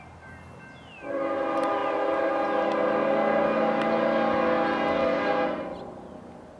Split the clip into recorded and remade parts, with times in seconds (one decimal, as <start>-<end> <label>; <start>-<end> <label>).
0.0-6.6 recorded